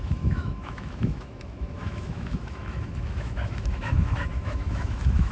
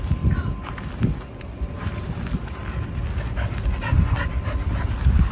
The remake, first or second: first